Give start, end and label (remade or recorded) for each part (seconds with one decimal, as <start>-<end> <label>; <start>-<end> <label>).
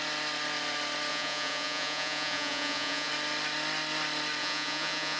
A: 0.0-1.1 recorded; 1.1-3.1 remade; 3.1-4.4 recorded; 4.4-5.2 remade